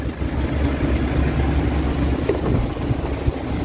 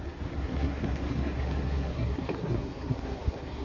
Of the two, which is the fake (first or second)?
second